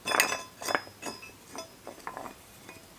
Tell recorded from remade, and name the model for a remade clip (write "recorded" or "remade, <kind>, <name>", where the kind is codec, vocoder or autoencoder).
recorded